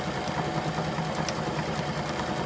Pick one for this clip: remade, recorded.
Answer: recorded